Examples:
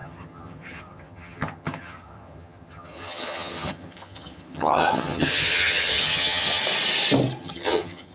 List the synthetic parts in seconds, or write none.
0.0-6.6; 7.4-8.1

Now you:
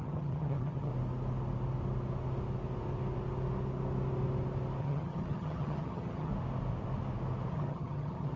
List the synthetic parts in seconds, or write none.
0.0-0.9; 4.8-6.3; 7.5-8.4